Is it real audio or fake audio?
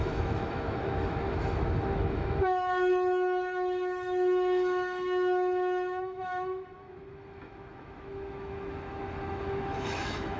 fake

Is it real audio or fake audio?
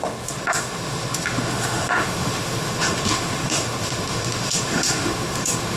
fake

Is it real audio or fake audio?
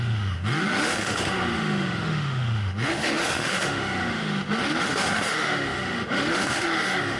fake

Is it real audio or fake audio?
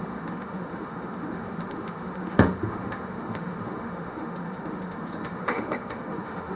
fake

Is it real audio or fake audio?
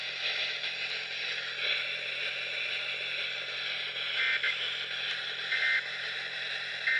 real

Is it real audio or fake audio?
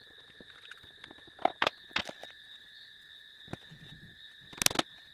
real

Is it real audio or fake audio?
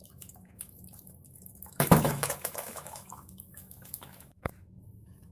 fake